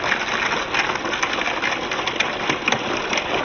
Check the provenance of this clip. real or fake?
real